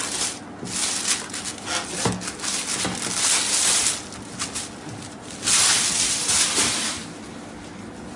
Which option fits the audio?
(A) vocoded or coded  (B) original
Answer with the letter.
B